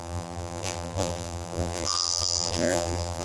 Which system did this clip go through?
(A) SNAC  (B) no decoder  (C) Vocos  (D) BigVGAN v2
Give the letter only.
D